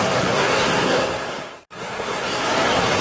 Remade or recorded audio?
remade